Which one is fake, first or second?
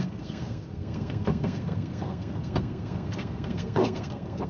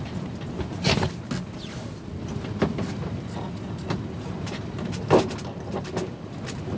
first